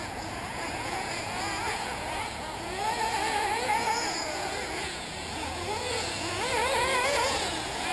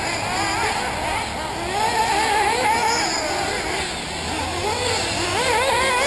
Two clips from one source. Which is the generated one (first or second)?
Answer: first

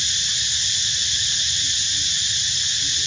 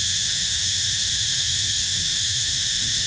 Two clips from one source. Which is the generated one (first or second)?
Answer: second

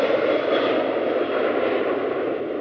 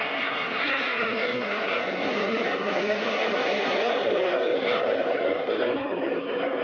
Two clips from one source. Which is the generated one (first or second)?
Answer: second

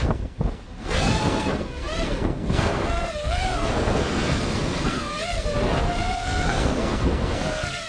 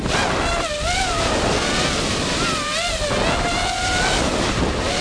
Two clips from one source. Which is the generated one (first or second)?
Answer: first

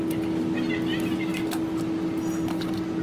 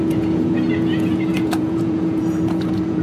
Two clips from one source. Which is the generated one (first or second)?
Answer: second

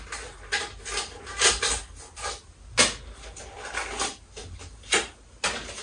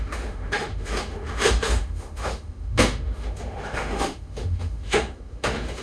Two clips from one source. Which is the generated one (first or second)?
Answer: second